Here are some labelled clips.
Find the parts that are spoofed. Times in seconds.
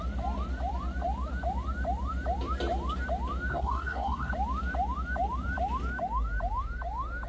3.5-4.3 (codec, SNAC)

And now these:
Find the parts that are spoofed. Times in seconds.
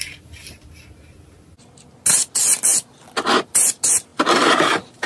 none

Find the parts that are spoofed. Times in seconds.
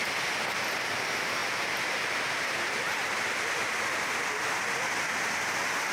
none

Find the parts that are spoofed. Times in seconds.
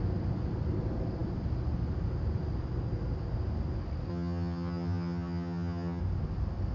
4.1-6.0 (vocoder, HiFi-GAN)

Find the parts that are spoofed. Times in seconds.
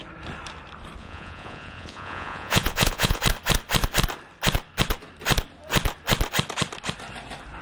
1.0-3.2 (vocoder, Vocos)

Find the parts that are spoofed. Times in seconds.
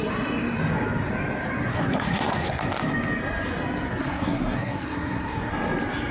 1.7-2.6 (codec, SNAC); 4.0-5.5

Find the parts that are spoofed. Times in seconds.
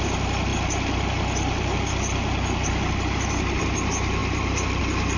0.0-0.5 (vocoder, BigVGAN v2); 3.6-5.2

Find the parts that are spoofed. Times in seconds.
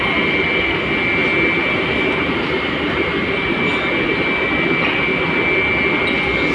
1.6-2.8 (vocoder, BigVGAN v2)